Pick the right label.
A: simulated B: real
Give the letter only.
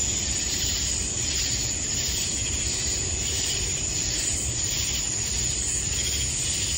A